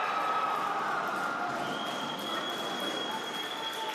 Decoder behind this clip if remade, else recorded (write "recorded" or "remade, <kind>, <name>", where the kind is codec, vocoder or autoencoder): recorded